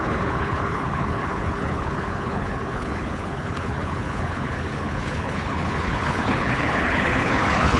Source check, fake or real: fake